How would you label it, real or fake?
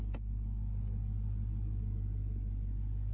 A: real